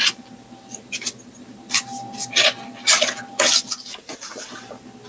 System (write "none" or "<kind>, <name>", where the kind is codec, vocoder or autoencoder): none